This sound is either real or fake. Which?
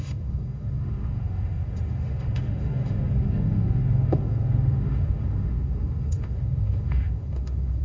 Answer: fake